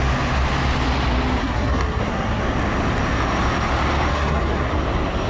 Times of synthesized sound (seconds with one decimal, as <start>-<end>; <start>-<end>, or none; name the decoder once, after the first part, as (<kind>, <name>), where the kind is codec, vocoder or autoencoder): 1.4-2.4 (codec, SNAC); 4.1-4.7